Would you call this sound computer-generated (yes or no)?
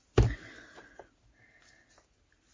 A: no